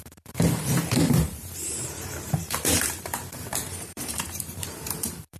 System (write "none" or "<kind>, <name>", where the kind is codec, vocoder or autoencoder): vocoder, BigVGAN v2